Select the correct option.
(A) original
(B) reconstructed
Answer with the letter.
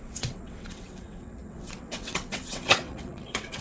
B